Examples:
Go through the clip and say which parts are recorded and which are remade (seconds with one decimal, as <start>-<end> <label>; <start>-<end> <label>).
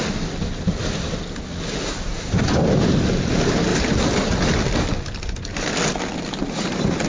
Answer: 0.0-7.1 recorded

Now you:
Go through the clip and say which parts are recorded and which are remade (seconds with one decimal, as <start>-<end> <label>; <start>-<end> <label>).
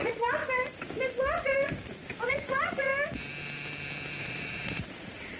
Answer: 0.0-0.4 remade; 0.4-2.3 recorded; 2.3-2.9 remade; 2.9-4.2 recorded; 4.2-5.4 remade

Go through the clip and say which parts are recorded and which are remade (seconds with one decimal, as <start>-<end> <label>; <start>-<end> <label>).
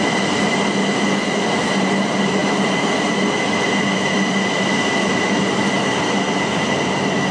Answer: 0.0-7.3 recorded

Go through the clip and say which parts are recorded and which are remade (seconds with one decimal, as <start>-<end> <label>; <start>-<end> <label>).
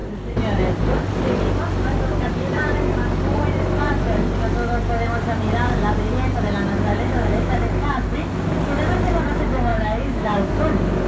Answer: 0.0-6.9 recorded; 6.9-7.5 remade; 7.5-9.7 recorded; 9.7-10.5 remade; 10.5-11.1 recorded